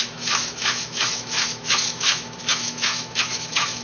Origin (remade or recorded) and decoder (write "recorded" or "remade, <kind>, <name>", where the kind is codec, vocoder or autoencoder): remade, autoencoder, DAC-VAE